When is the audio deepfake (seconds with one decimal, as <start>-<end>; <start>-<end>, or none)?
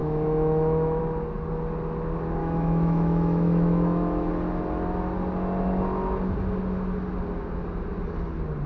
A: 0.0-1.0; 2.4-4.3